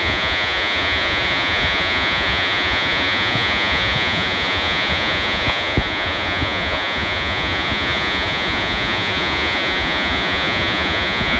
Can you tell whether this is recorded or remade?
remade